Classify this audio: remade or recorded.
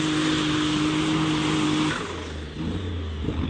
recorded